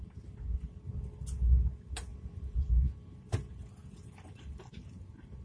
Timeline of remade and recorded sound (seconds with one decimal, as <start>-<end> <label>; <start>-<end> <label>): 0.0-2.1 recorded; 2.1-2.7 remade; 2.7-5.4 recorded